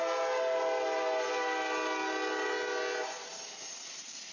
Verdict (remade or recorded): recorded